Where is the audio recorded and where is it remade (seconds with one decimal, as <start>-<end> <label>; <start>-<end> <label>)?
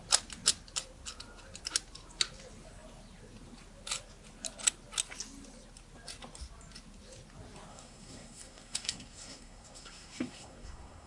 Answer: 0.0-7.7 recorded; 7.7-11.1 remade